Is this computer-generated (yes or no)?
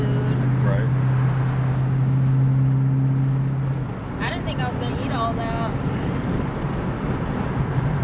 no